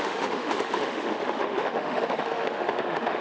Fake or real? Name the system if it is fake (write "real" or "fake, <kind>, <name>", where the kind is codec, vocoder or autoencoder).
fake, autoencoder, DAC-VAE